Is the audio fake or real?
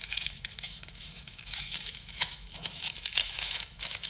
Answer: fake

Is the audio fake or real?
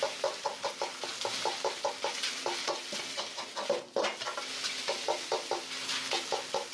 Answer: real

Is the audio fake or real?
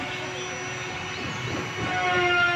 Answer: real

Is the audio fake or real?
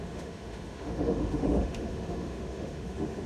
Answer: fake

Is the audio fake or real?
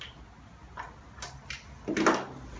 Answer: real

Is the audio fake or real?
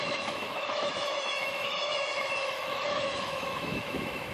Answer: fake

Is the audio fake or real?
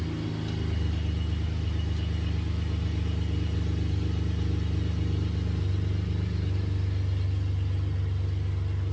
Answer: real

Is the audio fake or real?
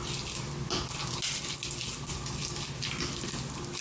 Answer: real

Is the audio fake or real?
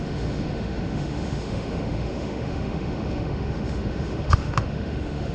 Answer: fake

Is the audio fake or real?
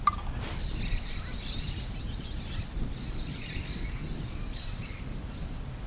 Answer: real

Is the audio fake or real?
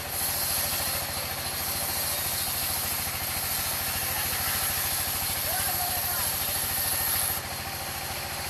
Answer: real